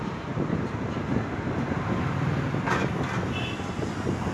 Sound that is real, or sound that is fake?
real